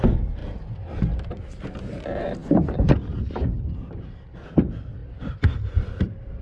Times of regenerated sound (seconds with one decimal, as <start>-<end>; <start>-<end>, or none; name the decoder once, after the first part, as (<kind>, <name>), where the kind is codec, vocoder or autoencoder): 0.0-0.4 (vocoder, BigVGAN v2); 1.0-5.0; 6.0-6.4